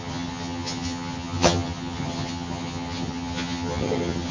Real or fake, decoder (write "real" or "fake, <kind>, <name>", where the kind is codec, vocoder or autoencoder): fake, vocoder, HiFi-GAN